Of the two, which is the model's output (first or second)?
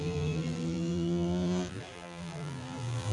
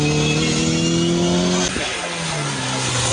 first